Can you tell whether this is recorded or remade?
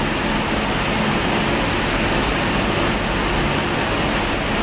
recorded